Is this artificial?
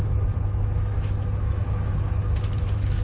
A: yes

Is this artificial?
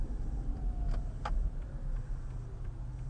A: no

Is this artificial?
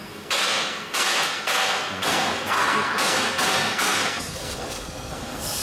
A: yes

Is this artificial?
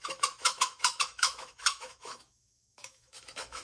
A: yes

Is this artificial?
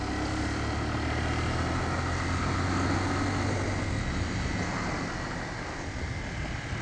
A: no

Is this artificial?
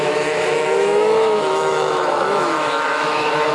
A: yes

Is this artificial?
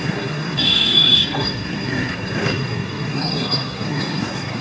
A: yes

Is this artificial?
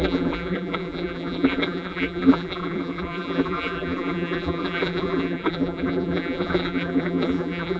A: yes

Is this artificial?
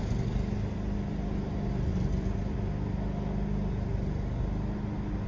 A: no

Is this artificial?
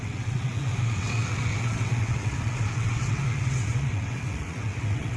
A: yes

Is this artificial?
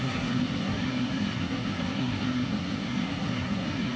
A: yes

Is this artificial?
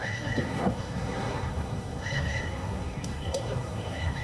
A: yes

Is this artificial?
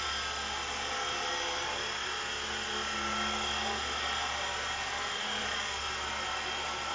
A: no